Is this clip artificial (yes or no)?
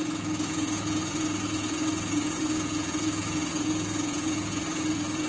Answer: yes